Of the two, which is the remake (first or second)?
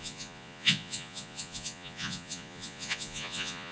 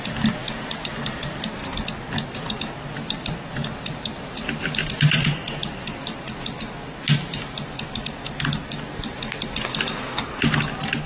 first